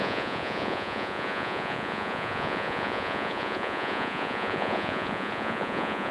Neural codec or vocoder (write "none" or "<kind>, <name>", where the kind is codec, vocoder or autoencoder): vocoder, Vocos